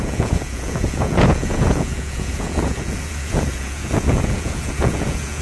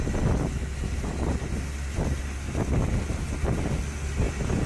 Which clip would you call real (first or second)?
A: second